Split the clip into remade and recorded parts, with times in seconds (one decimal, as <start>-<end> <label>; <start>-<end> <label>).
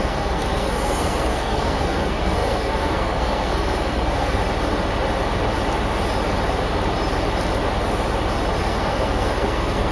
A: 0.0-4.4 remade; 4.4-8.6 recorded; 8.6-9.9 remade